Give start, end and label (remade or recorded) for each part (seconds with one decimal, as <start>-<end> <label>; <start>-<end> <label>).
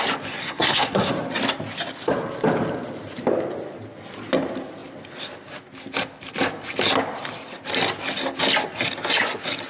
0.0-0.4 recorded; 0.4-1.1 remade; 1.1-9.7 recorded